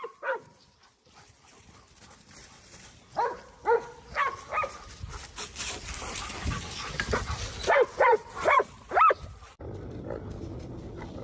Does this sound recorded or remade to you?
recorded